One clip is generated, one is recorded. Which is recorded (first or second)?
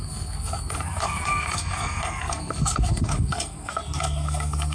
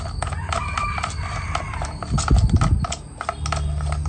second